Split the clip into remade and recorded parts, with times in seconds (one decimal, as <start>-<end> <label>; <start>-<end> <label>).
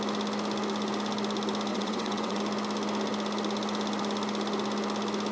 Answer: 0.0-1.7 recorded; 1.7-2.4 remade; 2.4-5.3 recorded